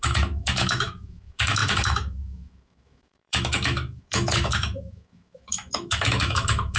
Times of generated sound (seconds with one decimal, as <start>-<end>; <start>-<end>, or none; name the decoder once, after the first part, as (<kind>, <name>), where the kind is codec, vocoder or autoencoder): 0.0-6.8 (autoencoder, DAC-VAE)